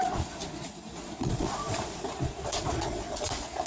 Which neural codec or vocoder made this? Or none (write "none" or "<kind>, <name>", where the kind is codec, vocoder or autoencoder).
vocoder, Vocos